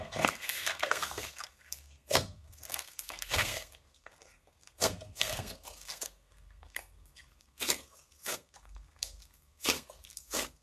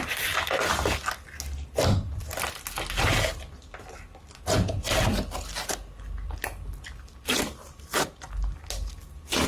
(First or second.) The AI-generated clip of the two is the first